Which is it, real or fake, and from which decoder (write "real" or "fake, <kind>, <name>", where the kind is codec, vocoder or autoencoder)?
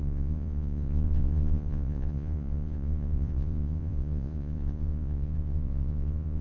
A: fake, vocoder, Vocos